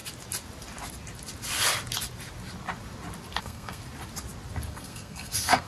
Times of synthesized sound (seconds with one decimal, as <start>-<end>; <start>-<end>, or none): 3.4-3.8; 4.7-5.7